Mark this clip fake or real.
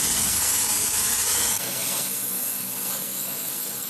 fake